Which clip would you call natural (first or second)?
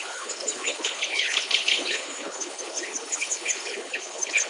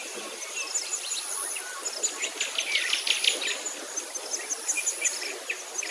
second